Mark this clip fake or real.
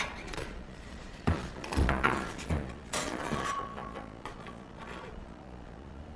fake